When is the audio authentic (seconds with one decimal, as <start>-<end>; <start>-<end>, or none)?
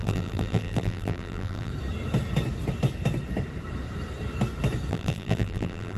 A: 1.7-4.9